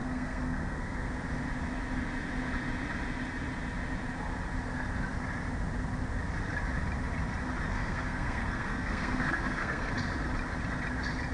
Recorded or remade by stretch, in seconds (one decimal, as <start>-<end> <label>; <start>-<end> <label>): 0.0-1.1 remade; 1.1-7.7 recorded; 7.7-9.9 remade; 9.9-11.3 recorded